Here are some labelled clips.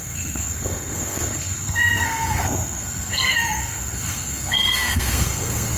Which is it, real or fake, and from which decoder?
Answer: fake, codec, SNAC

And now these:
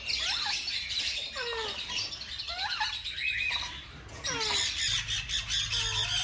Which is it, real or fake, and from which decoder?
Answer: real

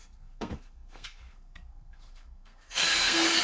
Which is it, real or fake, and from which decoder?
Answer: fake, codec, SNAC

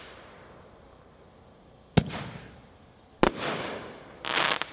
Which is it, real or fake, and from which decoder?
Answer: real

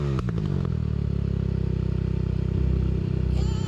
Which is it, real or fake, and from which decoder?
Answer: real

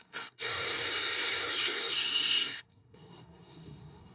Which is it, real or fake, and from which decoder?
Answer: fake, codec, SNAC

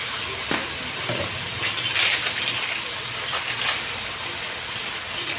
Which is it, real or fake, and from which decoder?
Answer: real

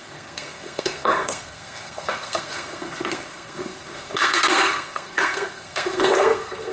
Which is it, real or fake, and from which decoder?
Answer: fake, codec, SNAC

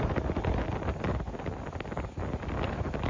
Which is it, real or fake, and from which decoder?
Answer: real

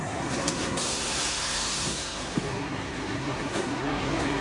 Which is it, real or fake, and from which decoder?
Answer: fake, codec, SNAC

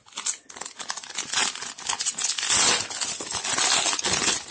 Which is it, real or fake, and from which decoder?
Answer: real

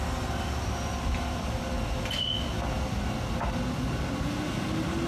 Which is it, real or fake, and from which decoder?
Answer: real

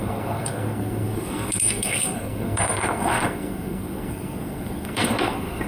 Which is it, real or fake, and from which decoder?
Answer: fake, codec, SNAC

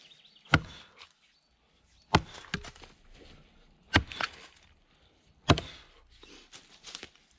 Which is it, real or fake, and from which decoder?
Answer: real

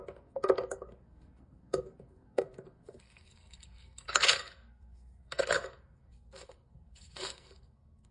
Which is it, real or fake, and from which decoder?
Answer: fake, codec, SNAC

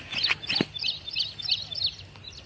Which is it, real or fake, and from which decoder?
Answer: real